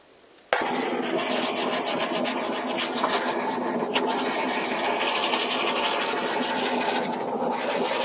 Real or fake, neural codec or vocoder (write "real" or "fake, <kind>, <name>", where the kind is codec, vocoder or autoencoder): real